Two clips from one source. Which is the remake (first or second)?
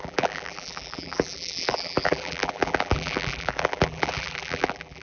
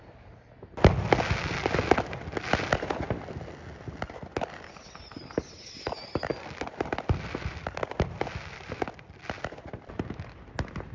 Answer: first